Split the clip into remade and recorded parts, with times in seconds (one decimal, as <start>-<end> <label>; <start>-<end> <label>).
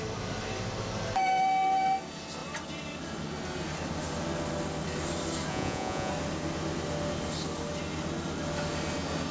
0.0-5.5 recorded; 5.5-6.1 remade; 6.1-9.3 recorded